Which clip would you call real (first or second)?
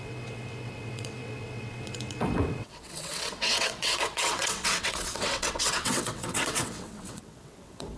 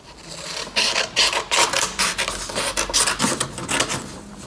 second